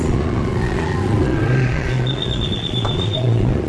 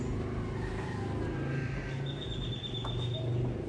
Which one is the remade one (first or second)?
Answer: first